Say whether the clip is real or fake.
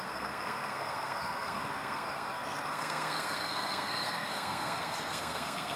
fake